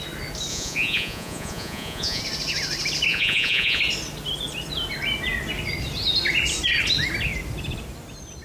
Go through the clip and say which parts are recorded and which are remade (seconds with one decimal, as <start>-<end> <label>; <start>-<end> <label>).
0.0-0.5 recorded; 0.5-2.2 remade; 2.2-3.1 recorded; 3.1-3.8 remade; 3.8-8.4 recorded